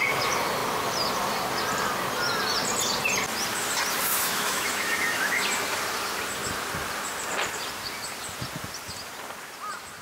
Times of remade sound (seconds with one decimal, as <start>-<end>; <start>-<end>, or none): 4.1-5.4